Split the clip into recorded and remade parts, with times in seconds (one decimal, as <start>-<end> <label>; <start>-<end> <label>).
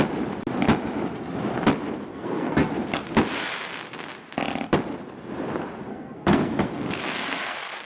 0.0-2.1 recorded; 2.1-2.7 remade; 2.7-5.9 recorded; 5.9-7.8 remade